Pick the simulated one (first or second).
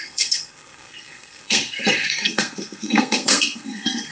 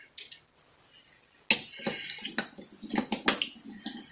first